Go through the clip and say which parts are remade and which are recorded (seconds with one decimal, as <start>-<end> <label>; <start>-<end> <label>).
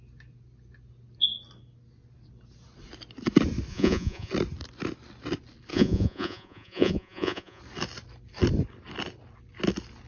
0.0-3.7 recorded; 3.7-4.3 remade; 4.3-5.7 recorded; 5.7-7.6 remade; 7.6-10.1 recorded